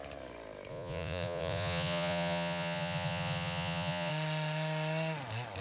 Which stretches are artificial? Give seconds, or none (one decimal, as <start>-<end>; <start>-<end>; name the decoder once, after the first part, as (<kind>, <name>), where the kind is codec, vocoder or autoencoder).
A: 0.7-4.1 (vocoder, Vocos)